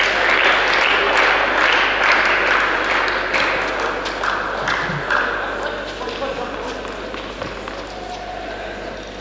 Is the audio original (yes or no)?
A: yes